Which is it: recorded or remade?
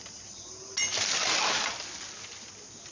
recorded